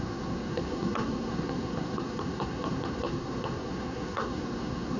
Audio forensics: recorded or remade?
remade